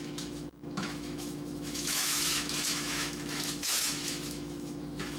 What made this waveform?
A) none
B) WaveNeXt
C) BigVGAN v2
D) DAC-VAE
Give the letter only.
D